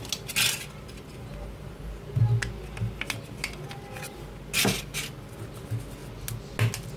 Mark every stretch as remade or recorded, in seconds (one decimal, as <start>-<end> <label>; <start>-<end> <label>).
0.0-1.1 recorded; 1.1-1.7 remade; 1.7-7.0 recorded